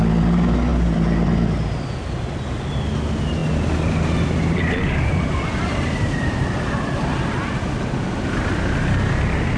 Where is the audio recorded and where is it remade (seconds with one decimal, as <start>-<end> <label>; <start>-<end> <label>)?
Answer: 0.0-9.6 recorded